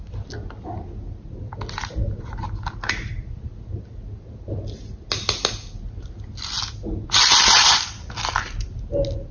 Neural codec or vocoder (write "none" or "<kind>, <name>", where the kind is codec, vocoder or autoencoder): none